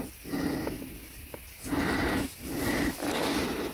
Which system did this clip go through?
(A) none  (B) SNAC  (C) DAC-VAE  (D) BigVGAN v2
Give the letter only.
A